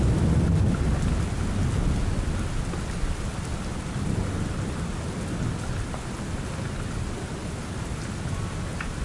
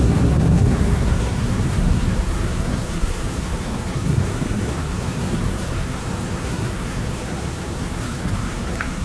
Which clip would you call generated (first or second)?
second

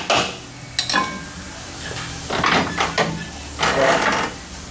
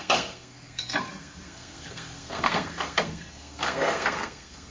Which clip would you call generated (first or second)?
second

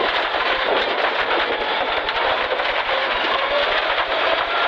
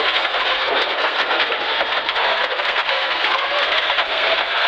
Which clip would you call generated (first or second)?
second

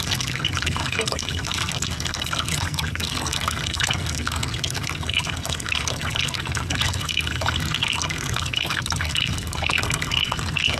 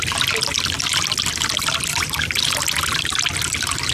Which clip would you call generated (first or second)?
first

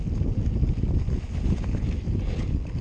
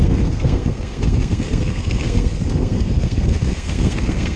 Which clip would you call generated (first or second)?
second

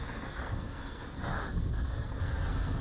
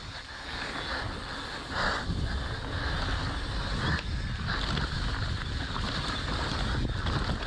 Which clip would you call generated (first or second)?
first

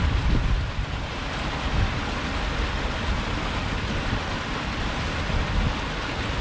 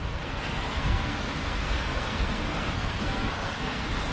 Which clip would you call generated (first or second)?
second